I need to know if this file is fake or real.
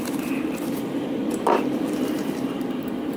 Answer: fake